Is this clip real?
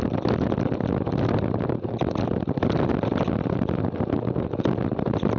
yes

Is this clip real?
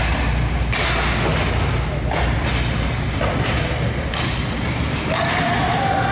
yes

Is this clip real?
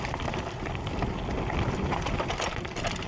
yes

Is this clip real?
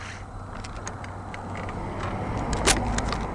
yes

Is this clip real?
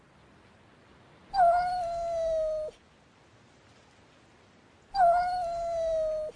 yes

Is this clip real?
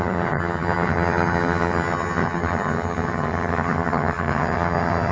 no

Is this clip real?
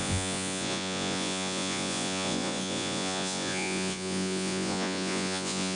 no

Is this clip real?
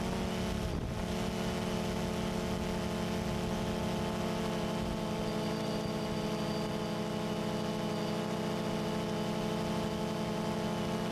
yes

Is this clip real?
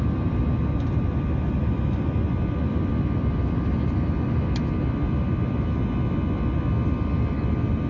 yes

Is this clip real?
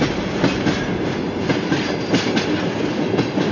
yes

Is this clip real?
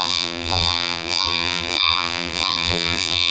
no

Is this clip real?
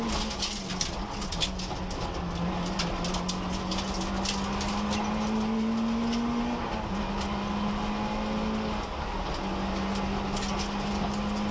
yes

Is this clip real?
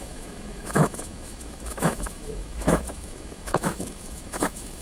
no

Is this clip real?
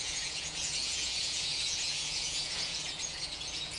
no